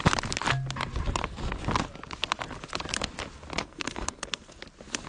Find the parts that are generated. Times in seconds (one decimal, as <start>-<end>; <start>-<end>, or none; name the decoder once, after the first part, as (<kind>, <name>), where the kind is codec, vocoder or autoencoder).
3.6-4.6 (codec, SNAC)